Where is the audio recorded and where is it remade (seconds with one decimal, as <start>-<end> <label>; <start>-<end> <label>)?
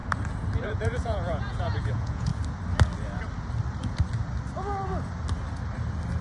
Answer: 0.0-0.7 recorded; 0.7-2.3 remade; 2.3-6.2 recorded